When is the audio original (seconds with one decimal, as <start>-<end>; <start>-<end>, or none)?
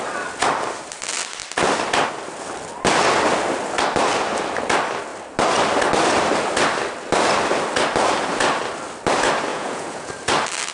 0.0-9.5; 10.1-10.7